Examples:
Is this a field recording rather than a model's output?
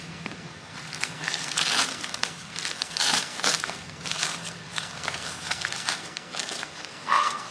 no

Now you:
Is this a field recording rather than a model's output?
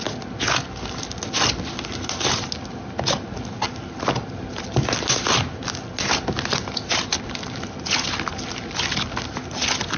yes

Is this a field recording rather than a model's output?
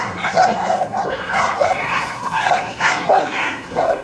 no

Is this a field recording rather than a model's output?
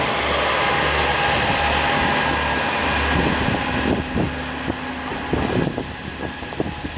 yes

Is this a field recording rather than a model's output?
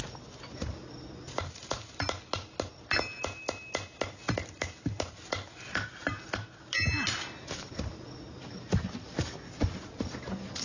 yes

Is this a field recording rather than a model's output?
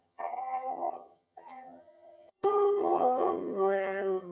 no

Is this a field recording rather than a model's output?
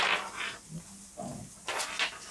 yes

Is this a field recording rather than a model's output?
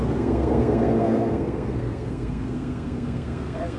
no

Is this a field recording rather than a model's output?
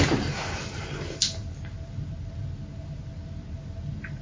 yes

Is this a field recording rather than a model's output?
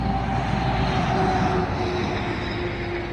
yes